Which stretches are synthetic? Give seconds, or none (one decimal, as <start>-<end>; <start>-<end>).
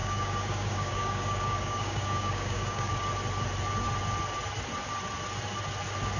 0.0-2.9